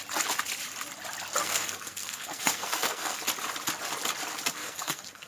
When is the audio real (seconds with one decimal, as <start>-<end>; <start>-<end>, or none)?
0.0-1.4; 3.2-4.6